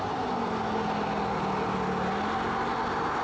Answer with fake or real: real